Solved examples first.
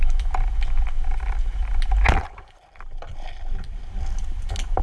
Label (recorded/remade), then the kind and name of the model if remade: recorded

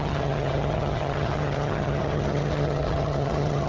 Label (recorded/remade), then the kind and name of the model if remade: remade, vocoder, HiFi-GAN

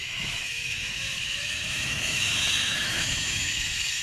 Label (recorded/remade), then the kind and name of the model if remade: remade, autoencoder, DAC-VAE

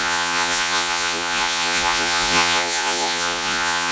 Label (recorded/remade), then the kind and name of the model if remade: remade, vocoder, Vocos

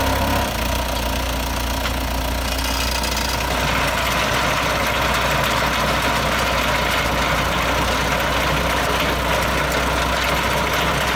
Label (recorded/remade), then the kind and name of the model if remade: recorded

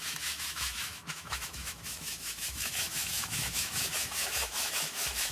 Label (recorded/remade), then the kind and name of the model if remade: remade, autoencoder, DAC-VAE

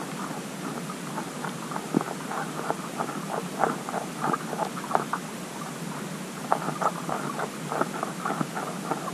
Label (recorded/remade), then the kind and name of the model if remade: recorded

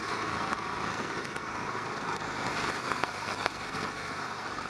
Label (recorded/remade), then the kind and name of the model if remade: remade, codec, SNAC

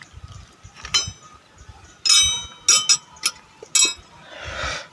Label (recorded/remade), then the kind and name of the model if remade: recorded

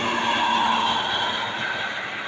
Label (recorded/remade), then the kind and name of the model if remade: recorded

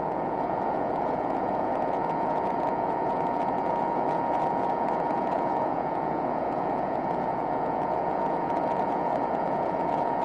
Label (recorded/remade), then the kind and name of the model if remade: remade, vocoder, Vocos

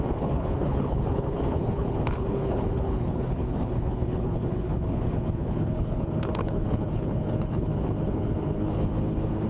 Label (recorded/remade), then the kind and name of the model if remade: remade, codec, HILCodec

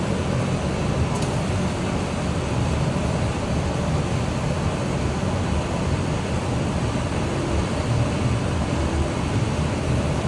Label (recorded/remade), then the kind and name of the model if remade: remade, vocoder, BigVGAN v2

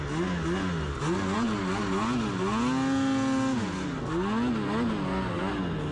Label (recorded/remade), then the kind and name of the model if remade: recorded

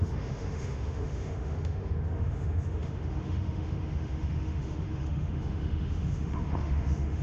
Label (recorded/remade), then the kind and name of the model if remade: remade, autoencoder, DAC-VAE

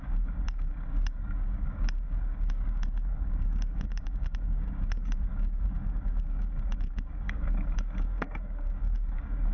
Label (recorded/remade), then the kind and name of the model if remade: remade, codec, DAC